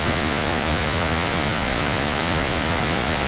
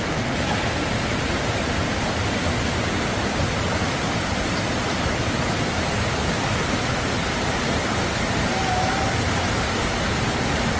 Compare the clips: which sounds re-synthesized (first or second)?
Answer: first